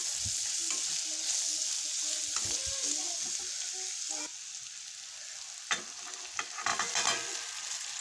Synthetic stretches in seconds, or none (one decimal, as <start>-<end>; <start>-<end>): none